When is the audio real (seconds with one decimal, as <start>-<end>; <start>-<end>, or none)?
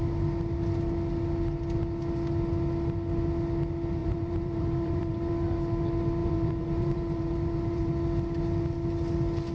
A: 0.0-4.0; 5.3-6.2; 7.9-9.5